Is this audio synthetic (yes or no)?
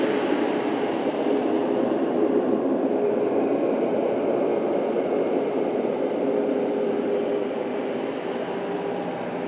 yes